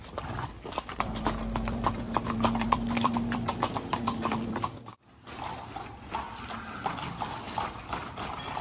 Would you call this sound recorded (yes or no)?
no